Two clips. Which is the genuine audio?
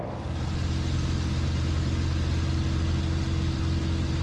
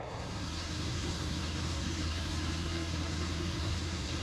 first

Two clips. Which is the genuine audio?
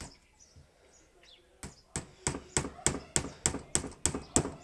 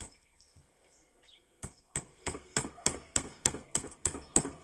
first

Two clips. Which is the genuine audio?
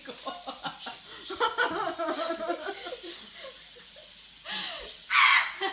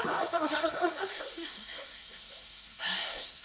first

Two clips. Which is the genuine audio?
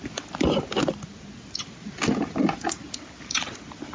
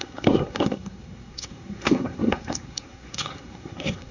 first